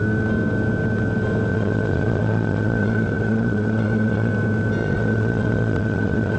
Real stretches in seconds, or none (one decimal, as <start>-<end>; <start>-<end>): 0.0-1.5; 4.3-4.8